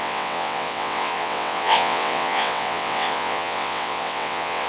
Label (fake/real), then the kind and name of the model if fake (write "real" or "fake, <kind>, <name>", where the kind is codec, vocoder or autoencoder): fake, vocoder, WaveNeXt